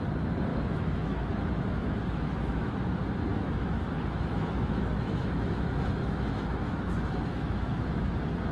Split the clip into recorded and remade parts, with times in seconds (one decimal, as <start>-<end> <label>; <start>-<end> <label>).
0.0-0.5 recorded; 0.5-2.7 remade; 2.7-3.3 recorded; 3.3-8.0 remade; 8.0-8.5 recorded